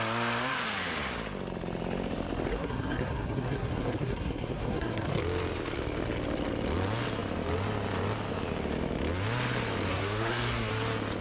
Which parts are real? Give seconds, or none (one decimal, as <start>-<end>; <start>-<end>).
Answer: 0.0-2.5; 5.2-9.9; 10.7-11.2